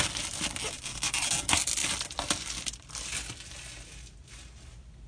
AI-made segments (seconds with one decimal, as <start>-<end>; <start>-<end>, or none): none